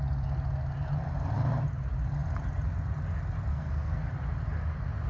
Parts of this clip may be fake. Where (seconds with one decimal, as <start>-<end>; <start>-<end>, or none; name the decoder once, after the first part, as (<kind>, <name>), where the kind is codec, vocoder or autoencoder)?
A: 3.5-4.1 (codec, SNAC)